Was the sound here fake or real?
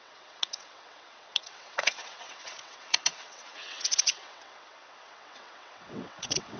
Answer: fake